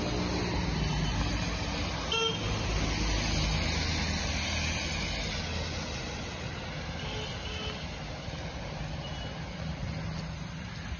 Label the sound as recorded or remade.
recorded